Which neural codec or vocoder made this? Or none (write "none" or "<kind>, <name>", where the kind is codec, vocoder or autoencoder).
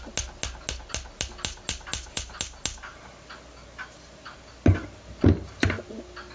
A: none